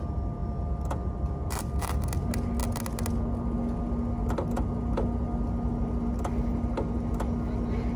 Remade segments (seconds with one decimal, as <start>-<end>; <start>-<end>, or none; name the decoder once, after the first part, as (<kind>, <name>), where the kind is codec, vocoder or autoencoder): none